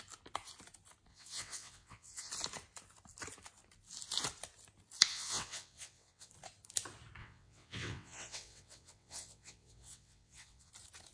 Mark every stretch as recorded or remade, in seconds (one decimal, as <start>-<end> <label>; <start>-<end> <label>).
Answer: 0.0-1.1 recorded; 1.1-2.3 remade; 2.3-5.1 recorded; 5.1-6.3 remade; 6.3-7.2 recorded; 7.2-10.7 remade; 10.7-11.1 recorded

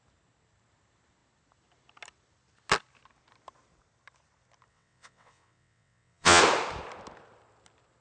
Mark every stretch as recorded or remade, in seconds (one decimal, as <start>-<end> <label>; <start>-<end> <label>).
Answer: 0.0-4.7 recorded; 4.7-6.4 remade; 6.4-8.0 recorded